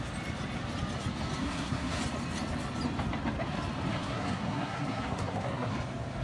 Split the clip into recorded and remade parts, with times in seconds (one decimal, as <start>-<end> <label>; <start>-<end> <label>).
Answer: 0.0-1.4 recorded; 1.4-2.0 remade; 2.0-3.9 recorded; 3.9-5.7 remade; 5.7-6.2 recorded